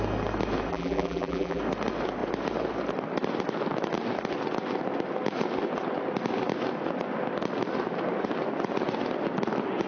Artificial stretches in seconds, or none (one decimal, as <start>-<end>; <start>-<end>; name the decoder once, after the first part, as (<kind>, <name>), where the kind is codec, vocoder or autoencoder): 0.7-1.6 (vocoder, BigVGAN v2)